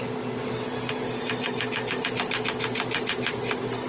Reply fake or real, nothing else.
real